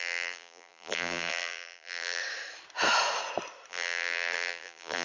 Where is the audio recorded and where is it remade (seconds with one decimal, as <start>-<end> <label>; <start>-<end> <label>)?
0.0-2.2 remade; 2.2-3.7 recorded; 3.7-5.0 remade